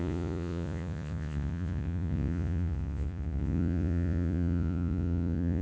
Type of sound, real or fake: fake